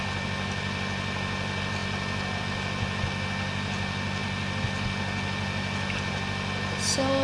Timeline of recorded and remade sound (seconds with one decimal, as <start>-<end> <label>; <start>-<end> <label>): 0.0-7.2 recorded